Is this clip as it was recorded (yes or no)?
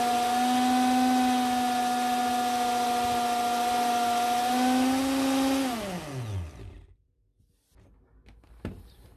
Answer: yes